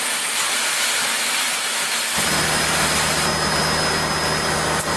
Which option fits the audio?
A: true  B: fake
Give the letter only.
A